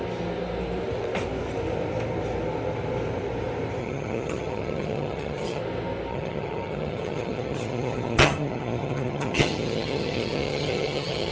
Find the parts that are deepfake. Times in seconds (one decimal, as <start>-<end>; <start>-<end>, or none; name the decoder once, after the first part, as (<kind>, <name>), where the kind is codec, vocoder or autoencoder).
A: 3.8-5.6 (vocoder, HiFi-GAN); 6.1-11.3